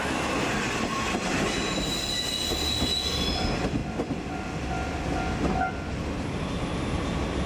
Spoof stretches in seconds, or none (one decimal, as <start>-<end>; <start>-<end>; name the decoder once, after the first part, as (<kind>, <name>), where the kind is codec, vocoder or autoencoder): none